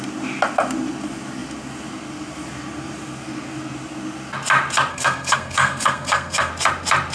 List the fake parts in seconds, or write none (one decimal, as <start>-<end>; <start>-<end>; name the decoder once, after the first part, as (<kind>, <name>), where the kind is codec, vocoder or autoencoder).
4.9-6.5 (codec, SNAC)